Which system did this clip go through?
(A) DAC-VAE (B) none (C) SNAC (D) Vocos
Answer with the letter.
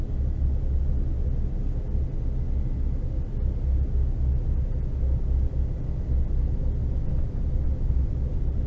B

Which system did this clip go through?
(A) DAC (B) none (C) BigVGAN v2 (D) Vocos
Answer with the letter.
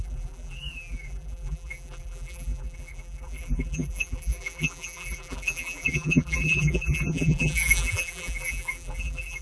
C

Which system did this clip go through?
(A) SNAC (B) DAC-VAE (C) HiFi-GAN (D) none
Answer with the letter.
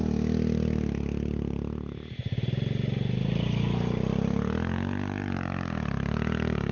D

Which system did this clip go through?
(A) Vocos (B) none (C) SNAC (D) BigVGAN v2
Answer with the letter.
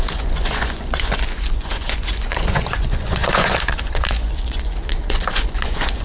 A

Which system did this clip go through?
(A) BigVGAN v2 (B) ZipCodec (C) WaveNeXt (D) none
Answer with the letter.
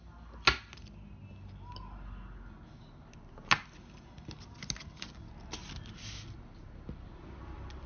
D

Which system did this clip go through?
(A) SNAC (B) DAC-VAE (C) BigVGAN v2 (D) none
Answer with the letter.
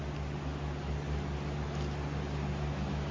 D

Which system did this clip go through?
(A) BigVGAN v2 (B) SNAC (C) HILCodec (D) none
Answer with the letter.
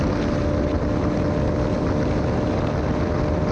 D